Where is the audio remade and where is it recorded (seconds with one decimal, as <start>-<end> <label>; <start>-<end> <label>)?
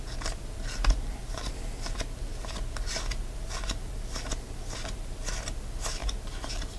0.0-6.8 recorded